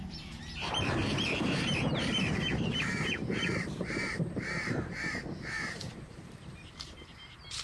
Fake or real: fake